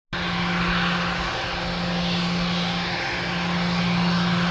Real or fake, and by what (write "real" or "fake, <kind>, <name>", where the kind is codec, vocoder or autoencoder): real